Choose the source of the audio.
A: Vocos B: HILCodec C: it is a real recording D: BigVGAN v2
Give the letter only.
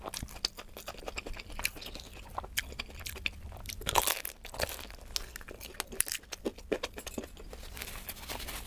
C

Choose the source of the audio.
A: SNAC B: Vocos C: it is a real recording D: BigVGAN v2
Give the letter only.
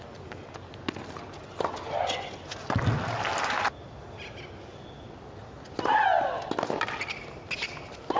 C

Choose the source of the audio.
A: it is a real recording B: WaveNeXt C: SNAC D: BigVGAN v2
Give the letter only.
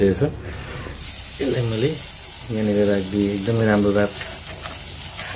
A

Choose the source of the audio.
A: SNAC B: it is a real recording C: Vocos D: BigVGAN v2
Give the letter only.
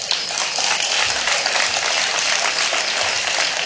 B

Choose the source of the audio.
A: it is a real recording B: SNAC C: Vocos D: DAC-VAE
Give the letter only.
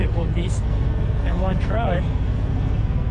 B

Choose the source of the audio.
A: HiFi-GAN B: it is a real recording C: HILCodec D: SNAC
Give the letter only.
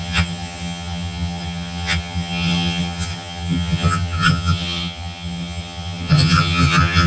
A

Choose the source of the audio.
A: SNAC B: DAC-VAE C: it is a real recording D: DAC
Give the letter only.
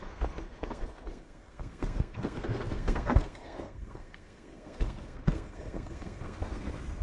A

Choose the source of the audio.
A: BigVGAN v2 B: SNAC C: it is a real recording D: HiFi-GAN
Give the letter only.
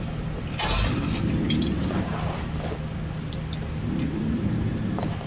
A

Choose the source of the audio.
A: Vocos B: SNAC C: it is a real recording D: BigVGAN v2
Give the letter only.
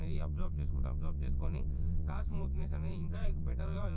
A